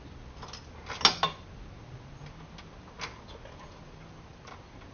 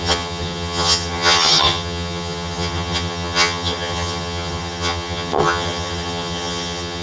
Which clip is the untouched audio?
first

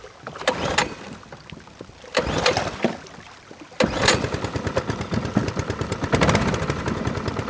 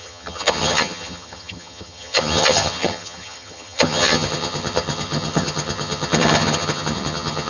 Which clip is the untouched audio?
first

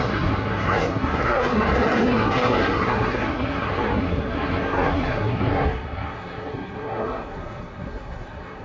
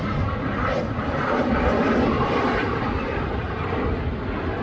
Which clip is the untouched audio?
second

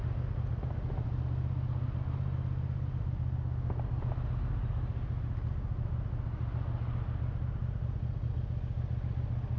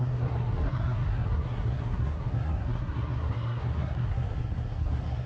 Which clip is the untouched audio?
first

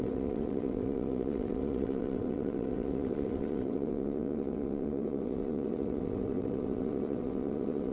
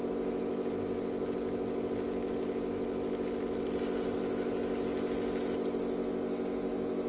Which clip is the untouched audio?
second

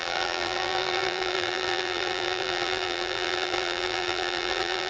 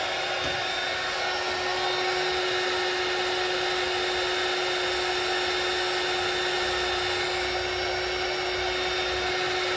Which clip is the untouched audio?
second